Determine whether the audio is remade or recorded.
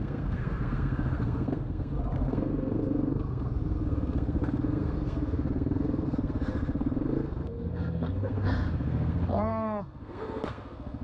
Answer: remade